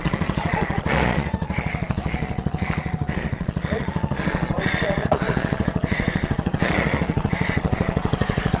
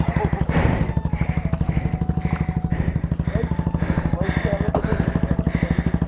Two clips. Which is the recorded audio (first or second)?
second